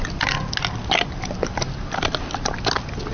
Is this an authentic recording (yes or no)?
yes